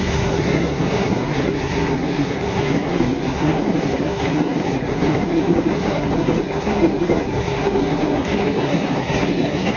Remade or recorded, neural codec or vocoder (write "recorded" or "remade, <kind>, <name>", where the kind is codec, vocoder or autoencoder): remade, codec, SNAC